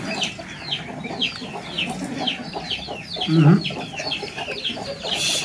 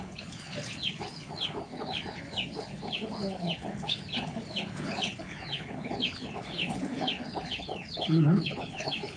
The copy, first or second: second